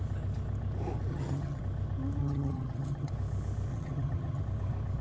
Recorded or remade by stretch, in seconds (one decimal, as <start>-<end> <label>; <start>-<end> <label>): 0.0-1.1 recorded; 1.1-1.6 remade; 1.6-2.2 recorded; 2.2-3.1 remade; 3.1-3.7 recorded; 3.7-4.4 remade; 4.4-5.0 recorded